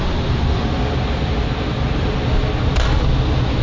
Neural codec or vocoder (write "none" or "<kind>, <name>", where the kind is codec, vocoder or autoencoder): none